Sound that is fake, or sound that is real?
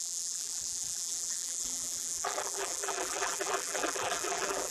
fake